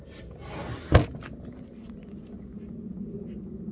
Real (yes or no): yes